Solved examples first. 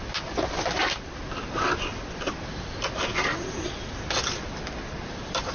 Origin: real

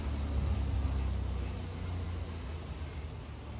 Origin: real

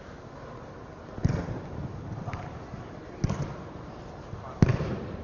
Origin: real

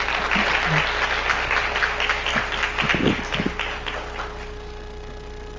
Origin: real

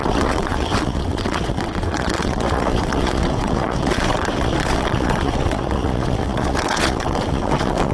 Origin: fake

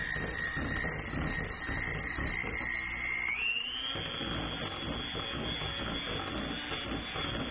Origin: real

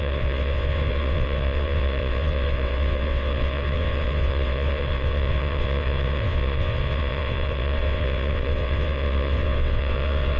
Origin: fake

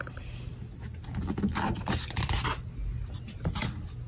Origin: real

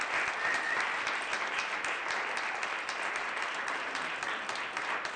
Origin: real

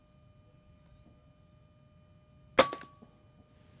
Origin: real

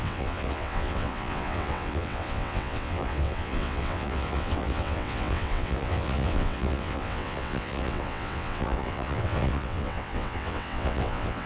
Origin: fake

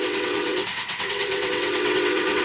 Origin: fake